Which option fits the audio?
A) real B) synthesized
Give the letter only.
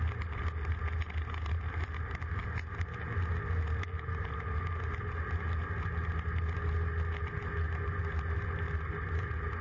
A